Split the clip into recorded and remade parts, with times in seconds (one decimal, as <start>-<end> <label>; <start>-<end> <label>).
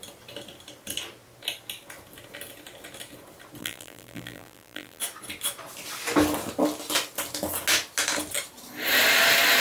0.0-3.6 recorded; 3.6-5.0 remade; 5.0-9.6 recorded